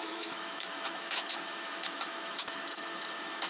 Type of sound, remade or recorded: remade